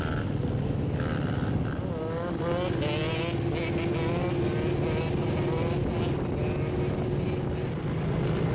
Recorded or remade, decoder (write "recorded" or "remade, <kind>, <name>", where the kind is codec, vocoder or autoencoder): recorded